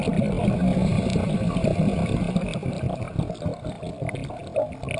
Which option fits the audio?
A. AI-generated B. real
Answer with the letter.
B